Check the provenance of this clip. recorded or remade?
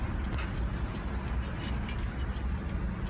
recorded